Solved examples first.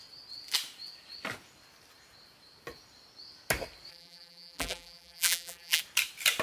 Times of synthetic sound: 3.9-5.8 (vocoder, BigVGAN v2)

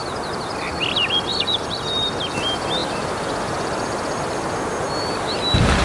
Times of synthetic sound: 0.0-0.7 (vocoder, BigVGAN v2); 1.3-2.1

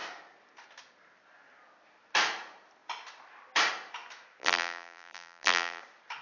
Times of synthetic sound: 4.4-5.8 (vocoder, BigVGAN v2)